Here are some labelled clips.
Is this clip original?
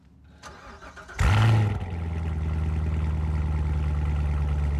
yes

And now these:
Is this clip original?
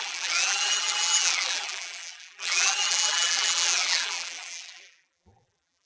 no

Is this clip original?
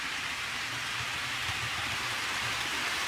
no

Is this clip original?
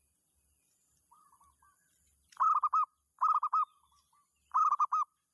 yes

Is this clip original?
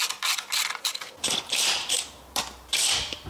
no